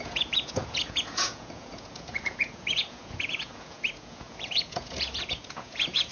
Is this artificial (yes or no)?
yes